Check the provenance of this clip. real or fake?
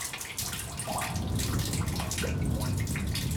real